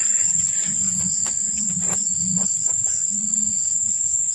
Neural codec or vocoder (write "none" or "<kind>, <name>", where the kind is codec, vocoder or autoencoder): vocoder, Vocos